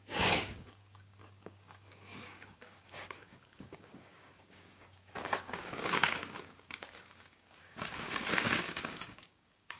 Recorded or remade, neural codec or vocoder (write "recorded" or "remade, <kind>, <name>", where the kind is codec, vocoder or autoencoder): remade, codec, DAC